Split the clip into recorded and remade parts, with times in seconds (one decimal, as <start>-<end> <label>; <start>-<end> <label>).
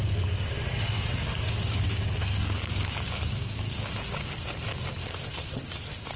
0.0-1.2 recorded; 1.2-4.0 remade; 4.0-4.7 recorded; 4.7-5.3 remade; 5.3-6.2 recorded